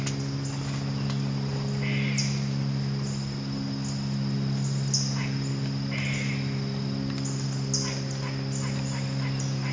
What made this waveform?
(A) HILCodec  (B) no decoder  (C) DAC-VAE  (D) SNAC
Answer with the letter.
B